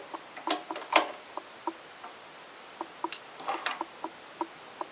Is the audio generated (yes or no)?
no